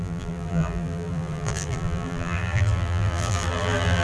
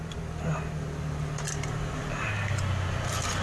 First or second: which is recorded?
second